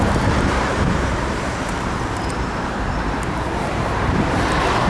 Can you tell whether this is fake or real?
fake